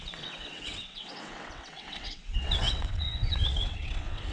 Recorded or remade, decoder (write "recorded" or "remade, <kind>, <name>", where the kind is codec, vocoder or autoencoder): remade, vocoder, WaveNeXt